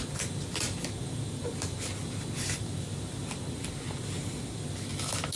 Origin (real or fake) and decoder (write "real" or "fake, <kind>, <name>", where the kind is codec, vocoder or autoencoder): real